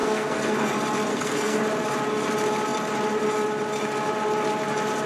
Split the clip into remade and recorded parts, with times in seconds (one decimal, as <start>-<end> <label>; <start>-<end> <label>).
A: 0.0-0.7 remade; 0.7-1.1 recorded; 1.1-1.6 remade; 1.6-5.1 recorded